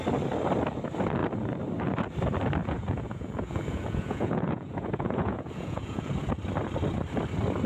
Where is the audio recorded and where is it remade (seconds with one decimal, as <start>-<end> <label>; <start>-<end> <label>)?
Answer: 0.0-2.6 recorded; 2.6-6.3 remade; 6.3-7.7 recorded